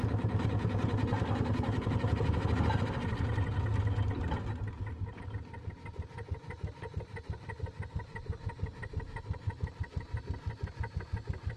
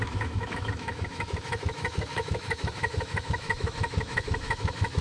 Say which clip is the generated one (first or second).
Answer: second